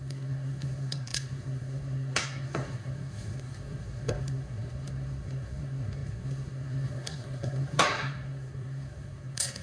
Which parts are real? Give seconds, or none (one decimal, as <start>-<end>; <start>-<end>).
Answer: none